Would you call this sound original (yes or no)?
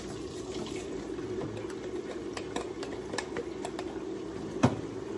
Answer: yes